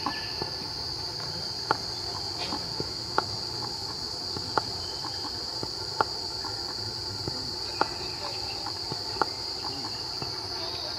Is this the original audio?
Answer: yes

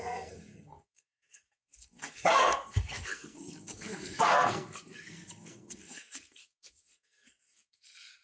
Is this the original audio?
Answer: no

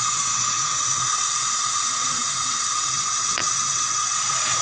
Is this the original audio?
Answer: no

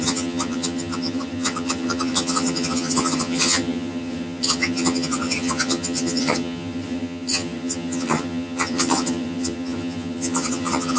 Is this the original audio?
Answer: no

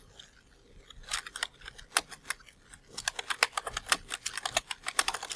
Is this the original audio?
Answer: yes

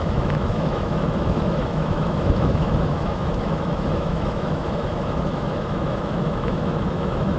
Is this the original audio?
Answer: no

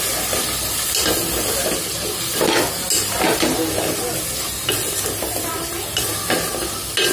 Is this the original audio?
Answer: yes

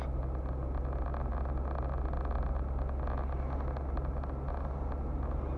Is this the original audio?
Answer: yes